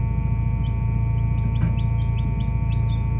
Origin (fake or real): real